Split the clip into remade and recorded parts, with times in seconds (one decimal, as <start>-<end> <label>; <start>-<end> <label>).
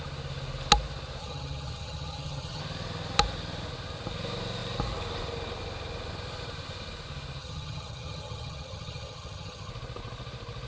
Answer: 0.0-1.2 recorded; 1.2-2.6 remade; 2.6-7.4 recorded; 7.4-9.7 remade; 9.7-10.7 recorded